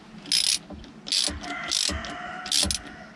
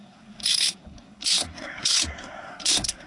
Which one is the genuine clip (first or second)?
first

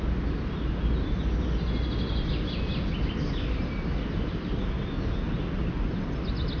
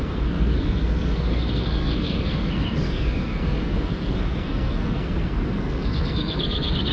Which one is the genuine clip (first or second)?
first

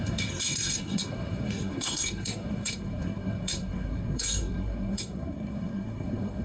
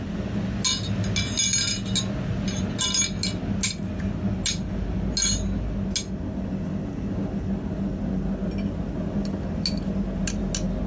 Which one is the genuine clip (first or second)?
second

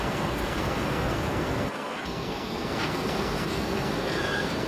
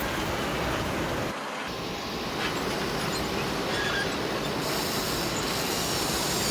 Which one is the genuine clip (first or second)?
second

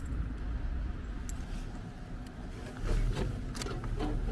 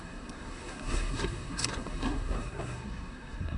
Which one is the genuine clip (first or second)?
first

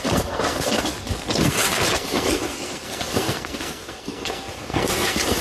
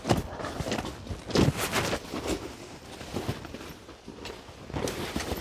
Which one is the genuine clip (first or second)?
second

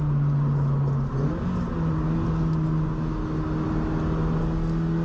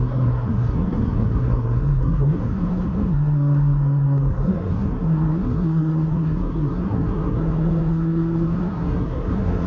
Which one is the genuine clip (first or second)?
first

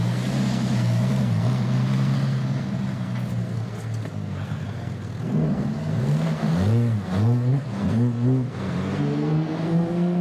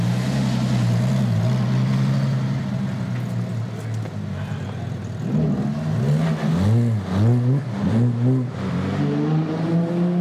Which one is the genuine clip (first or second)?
second